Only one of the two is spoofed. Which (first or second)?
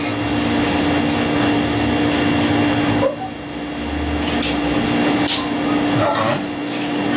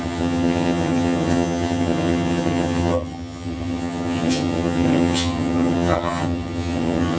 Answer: second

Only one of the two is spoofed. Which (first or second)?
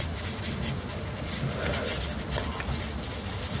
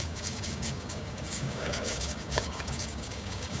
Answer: second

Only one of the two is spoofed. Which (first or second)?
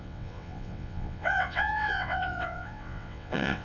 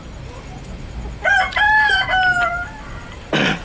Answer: first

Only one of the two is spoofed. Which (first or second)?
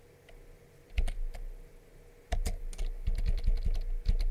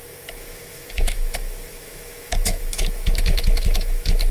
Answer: second